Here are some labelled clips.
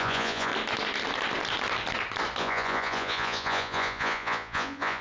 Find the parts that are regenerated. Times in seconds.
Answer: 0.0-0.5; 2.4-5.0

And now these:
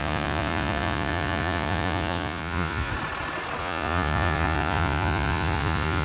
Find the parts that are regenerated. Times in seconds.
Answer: 0.0-2.9; 3.6-6.0

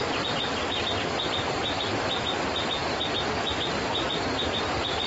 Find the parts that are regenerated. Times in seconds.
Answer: none

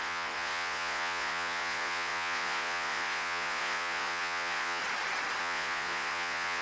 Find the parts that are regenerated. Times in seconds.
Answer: 0.0-4.8; 5.4-6.6

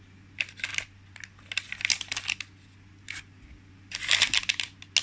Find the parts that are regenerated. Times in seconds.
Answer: none

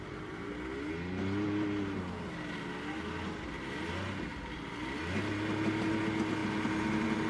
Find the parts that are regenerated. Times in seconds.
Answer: none